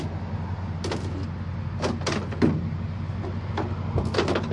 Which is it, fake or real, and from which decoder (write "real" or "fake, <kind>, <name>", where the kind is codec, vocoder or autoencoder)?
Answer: real